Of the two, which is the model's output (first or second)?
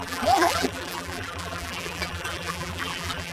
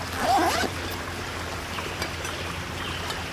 first